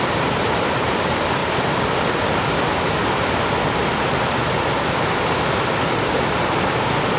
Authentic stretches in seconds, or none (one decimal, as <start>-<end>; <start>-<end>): 0.0-7.2